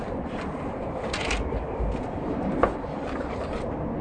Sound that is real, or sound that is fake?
real